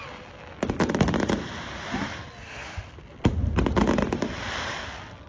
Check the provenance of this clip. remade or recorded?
recorded